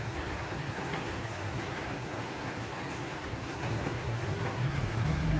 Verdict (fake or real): fake